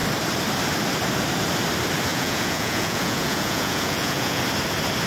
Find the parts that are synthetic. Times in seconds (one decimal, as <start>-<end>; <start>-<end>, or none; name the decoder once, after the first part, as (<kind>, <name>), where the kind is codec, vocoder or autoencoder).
2.1-4.4 (vocoder, Vocos)